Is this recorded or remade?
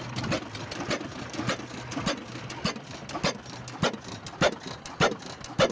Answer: recorded